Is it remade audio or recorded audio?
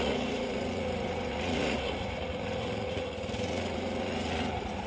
remade